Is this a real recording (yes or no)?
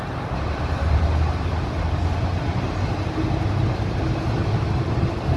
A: yes